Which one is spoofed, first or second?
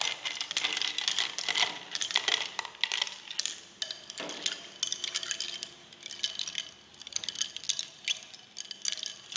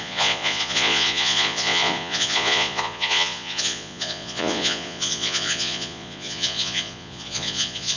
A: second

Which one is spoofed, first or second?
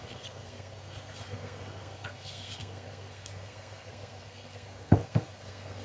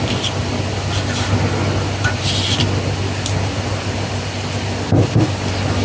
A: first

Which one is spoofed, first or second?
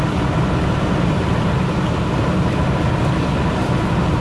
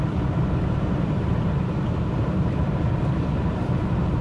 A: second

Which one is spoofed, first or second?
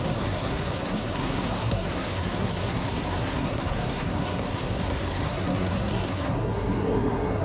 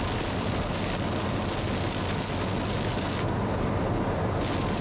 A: first